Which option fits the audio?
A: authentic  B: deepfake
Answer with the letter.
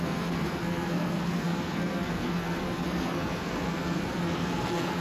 B